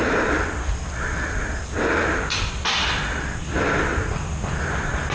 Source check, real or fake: real